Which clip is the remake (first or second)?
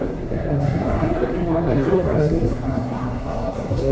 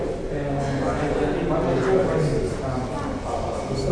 first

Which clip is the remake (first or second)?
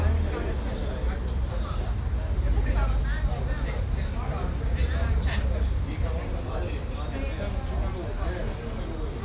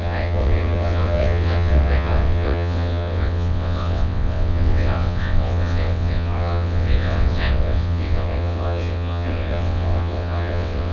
second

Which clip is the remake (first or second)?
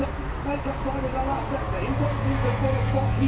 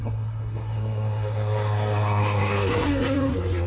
second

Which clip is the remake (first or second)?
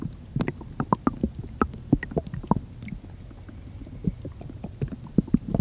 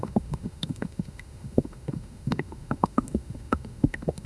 second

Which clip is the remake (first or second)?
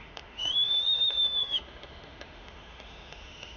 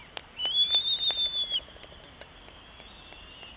first